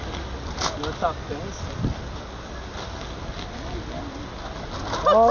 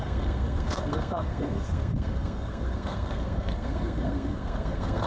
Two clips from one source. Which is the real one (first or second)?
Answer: first